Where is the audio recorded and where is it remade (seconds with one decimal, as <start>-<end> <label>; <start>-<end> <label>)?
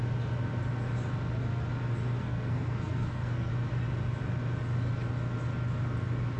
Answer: 0.0-2.2 recorded; 2.2-3.5 remade; 3.5-6.4 recorded